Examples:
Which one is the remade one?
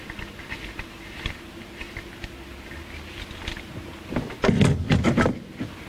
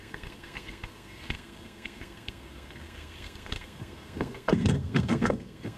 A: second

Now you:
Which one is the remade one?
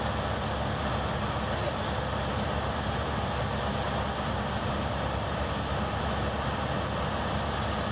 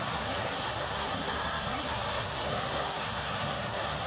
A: second